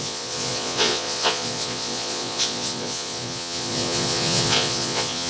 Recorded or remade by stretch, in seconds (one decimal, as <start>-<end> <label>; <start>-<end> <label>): 0.0-5.3 remade